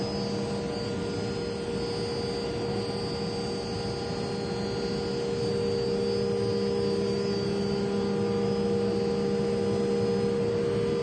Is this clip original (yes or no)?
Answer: yes